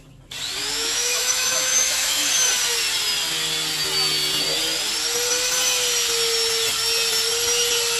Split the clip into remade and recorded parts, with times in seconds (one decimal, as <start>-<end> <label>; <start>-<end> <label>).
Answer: 0.0-0.6 recorded; 0.6-2.3 remade; 2.3-8.0 recorded